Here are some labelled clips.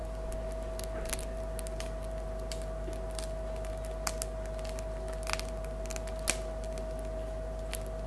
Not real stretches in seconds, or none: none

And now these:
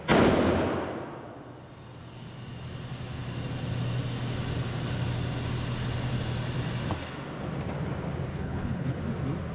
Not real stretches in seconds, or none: 8.3-9.0 (codec, HILCodec)

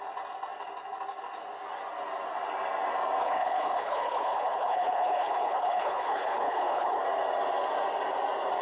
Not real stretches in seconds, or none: 3.2-7.0 (codec, HILCodec)

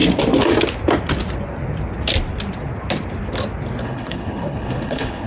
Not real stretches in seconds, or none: 3.8-5.3 (codec, HILCodec)